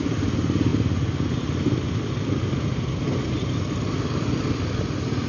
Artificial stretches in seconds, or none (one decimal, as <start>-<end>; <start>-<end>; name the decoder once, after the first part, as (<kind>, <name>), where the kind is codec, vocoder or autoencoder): none